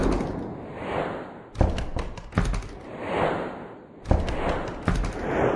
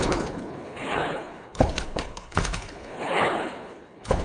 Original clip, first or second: first